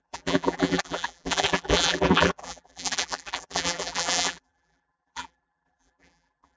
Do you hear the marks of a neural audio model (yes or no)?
yes